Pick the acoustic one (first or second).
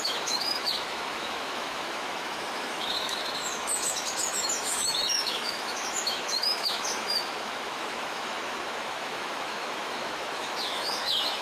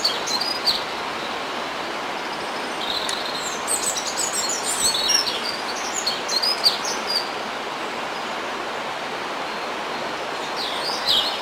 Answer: second